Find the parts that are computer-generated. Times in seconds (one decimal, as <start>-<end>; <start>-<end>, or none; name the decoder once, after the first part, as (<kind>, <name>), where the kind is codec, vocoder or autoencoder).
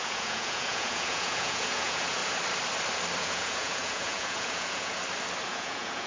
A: 0.0-2.2 (vocoder, Vocos); 3.2-5.0; 5.5-6.1